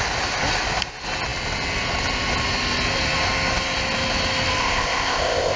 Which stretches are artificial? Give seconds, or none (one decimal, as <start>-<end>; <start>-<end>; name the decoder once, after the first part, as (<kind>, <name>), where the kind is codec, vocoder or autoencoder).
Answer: 4.6-5.6 (codec, ZipCodec)

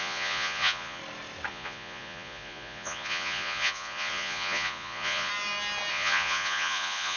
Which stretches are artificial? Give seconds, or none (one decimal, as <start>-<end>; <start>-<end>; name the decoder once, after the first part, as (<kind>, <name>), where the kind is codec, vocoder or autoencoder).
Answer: 0.0-1.0 (vocoder, Vocos); 1.5-5.3; 5.9-7.2